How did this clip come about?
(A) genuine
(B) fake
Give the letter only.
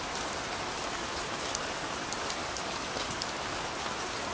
A